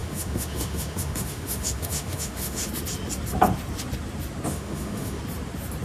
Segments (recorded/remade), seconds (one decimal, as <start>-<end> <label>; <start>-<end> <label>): 0.0-2.7 remade; 2.7-4.5 recorded; 4.5-5.2 remade; 5.2-5.8 recorded